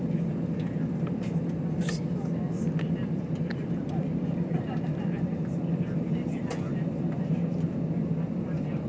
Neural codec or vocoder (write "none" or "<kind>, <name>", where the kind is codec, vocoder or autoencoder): none